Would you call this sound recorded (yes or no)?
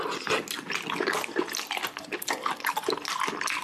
yes